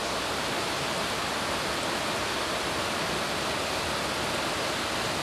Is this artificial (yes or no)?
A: no